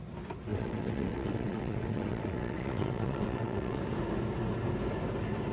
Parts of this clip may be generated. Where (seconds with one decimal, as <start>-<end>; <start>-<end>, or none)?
0.5-3.8